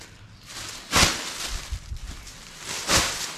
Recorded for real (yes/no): yes